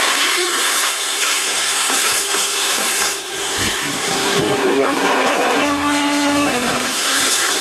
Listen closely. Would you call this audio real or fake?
fake